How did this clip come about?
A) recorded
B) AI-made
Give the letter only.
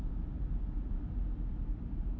A